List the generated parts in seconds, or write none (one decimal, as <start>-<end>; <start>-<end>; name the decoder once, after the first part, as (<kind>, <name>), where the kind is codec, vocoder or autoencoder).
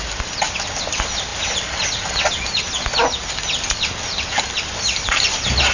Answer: none